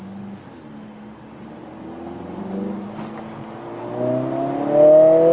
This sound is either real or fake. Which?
real